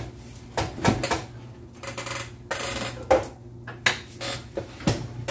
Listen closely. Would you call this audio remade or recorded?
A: recorded